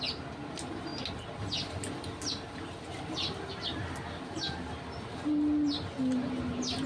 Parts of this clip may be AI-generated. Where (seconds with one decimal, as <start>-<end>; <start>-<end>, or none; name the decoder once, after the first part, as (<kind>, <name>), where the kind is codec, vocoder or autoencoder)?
none